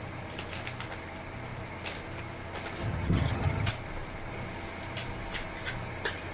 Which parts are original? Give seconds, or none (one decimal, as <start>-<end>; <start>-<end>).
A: 0.0-2.8; 3.7-6.3